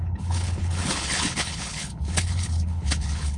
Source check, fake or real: fake